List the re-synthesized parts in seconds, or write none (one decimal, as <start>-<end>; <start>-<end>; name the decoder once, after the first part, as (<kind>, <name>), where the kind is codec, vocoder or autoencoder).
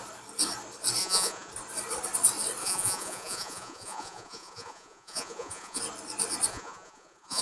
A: 1.0-1.5 (vocoder, Vocos); 2.6-5.8; 6.5-7.4